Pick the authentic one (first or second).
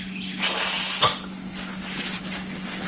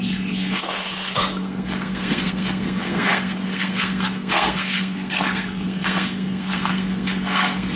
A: first